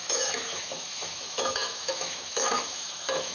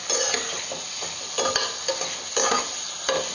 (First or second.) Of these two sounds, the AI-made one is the first